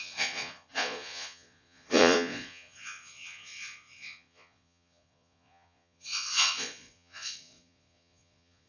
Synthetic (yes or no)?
yes